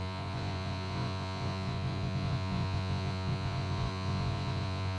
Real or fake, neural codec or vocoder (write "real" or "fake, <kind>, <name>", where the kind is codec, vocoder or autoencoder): fake, vocoder, Vocos